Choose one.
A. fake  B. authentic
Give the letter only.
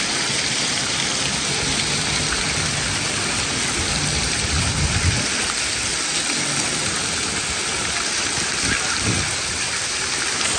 B